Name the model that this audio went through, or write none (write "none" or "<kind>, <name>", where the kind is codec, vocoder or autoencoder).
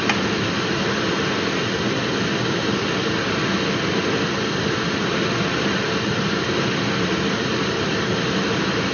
none